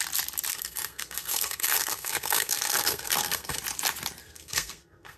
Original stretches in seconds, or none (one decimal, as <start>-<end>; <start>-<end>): 0.0-0.5; 3.6-4.2